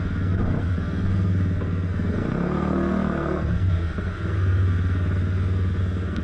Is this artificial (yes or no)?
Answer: yes